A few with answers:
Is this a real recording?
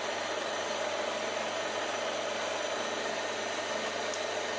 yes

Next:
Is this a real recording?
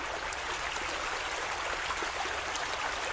yes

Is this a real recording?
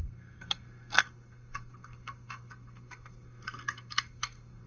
no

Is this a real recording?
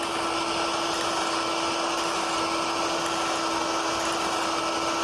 yes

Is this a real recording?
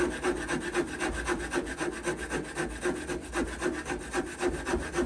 yes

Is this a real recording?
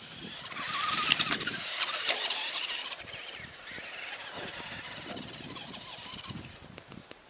no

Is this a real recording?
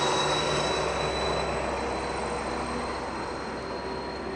yes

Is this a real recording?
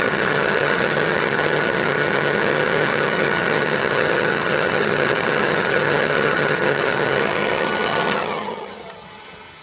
no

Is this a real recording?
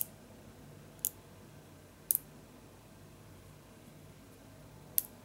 yes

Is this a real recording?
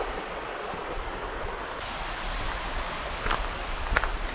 yes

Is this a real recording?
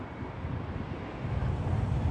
yes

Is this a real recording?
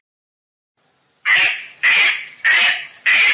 yes